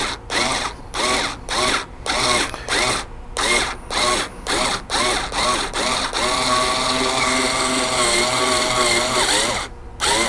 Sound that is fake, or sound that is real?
real